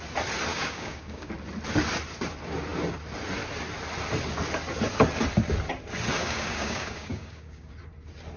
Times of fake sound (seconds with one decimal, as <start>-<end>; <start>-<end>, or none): 0.5-1.3; 6.2-7.7